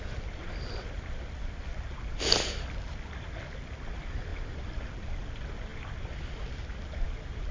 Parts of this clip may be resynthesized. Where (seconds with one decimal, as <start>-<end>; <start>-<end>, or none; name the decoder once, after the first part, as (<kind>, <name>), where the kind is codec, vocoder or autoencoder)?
4.3-4.8 (vocoder, BigVGAN v2)